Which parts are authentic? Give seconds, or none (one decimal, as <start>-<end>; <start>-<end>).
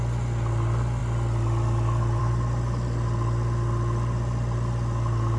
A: 0.0-5.4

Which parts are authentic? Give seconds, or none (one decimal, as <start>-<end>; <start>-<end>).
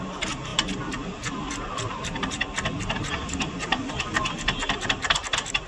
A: 0.0-5.7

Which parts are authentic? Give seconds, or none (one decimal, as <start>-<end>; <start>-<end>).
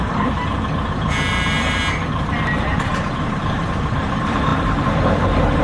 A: 1.8-2.7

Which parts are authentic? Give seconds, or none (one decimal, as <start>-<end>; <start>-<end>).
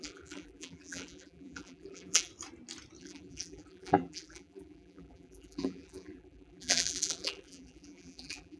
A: 2.3-3.0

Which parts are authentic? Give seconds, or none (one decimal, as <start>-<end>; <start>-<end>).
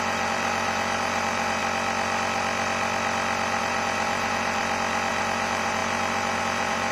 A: 1.6-3.6; 4.6-5.1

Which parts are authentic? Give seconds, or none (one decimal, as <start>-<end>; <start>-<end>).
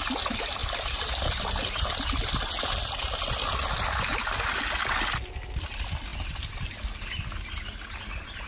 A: 0.0-8.5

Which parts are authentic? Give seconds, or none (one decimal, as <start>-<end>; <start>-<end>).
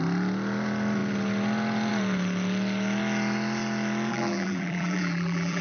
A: 0.0-4.1